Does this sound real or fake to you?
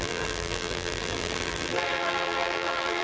fake